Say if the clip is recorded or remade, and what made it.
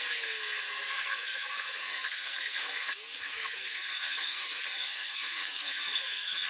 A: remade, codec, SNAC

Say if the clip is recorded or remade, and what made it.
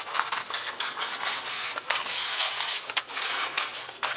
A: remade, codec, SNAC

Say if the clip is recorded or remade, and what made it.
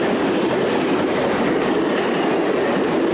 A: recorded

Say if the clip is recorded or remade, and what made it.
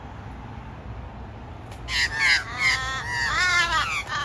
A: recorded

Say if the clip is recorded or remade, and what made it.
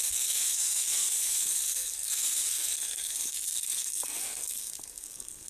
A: remade, codec, SNAC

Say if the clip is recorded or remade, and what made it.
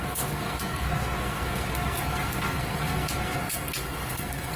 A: remade, codec, SNAC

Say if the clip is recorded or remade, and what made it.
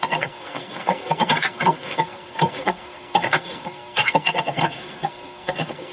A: remade, codec, SNAC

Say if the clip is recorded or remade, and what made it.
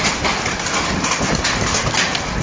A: recorded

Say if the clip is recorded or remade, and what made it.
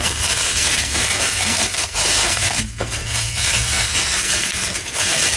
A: remade, codec, SNAC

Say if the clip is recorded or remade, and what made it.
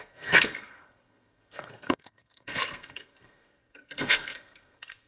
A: remade, codec, SNAC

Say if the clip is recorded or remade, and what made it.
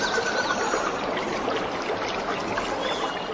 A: recorded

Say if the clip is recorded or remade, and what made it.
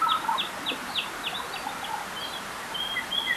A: recorded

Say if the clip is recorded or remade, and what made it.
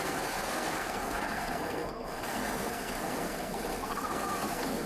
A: remade, codec, SNAC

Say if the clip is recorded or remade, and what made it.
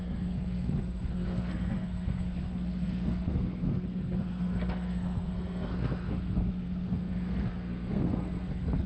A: remade, codec, SNAC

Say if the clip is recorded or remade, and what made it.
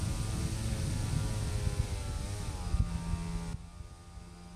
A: recorded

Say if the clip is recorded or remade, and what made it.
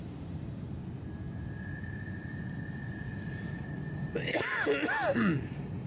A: recorded